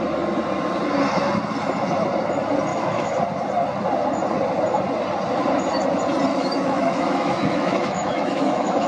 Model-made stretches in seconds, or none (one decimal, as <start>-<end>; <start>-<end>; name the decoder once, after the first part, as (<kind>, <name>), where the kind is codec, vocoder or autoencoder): 2.7-3.2 (autoencoder, DAC-VAE); 6.3-8.9